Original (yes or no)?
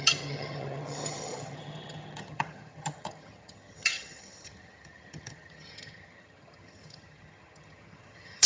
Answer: no